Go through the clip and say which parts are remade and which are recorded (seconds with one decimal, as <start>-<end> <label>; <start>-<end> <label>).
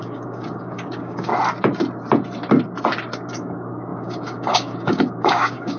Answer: 0.0-1.3 remade; 1.3-3.3 recorded; 3.3-5.8 remade